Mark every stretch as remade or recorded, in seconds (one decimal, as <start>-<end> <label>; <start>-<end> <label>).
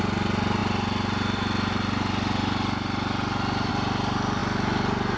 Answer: 0.0-5.2 recorded